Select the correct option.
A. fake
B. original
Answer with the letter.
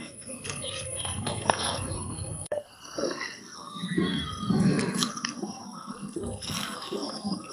A